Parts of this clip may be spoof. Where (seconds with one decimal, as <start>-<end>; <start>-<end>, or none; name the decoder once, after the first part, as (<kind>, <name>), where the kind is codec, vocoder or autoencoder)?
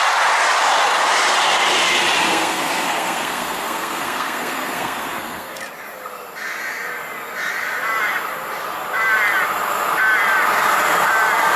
2.3-5.6 (codec, SNAC)